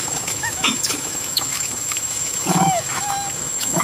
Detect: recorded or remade remade